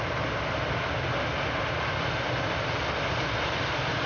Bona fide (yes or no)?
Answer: yes